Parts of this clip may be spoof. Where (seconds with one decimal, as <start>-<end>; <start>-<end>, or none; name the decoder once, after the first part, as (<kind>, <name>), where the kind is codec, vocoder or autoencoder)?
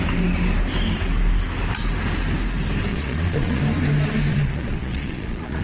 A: 2.9-3.6 (vocoder, Vocos); 4.3-5.6